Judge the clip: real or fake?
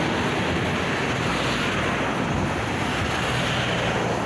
real